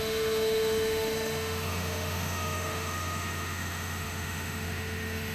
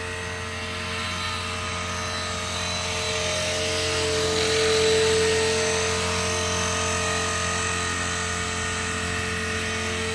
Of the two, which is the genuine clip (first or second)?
second